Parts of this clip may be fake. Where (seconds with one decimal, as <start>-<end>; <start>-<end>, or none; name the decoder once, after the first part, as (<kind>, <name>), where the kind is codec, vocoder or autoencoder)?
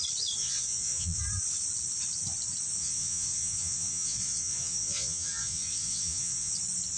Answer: 0.4-1.2 (vocoder, Vocos); 2.8-6.5